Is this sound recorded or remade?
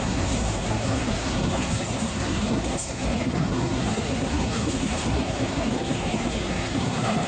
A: remade